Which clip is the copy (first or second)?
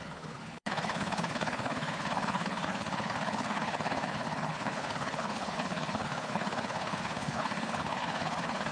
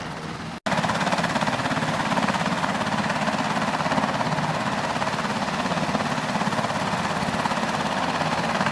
first